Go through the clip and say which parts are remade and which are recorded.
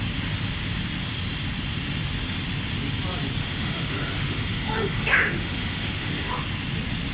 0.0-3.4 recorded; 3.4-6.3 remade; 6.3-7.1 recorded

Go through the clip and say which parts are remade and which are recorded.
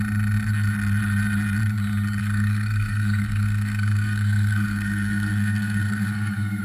0.0-2.2 recorded; 2.2-6.6 remade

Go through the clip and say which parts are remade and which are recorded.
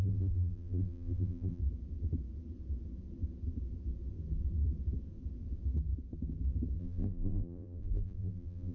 0.0-1.6 remade; 1.6-6.8 recorded; 6.8-8.7 remade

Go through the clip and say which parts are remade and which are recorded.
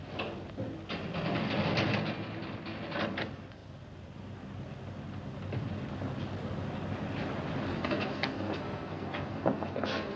0.0-7.7 recorded; 7.7-10.2 remade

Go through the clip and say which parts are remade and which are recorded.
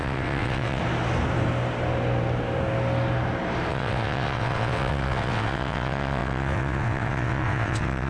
0.0-0.8 remade; 0.8-3.7 recorded; 3.7-8.1 remade